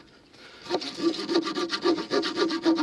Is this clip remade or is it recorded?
recorded